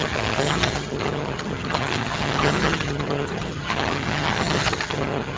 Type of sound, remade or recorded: remade